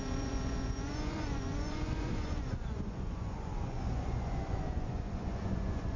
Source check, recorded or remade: remade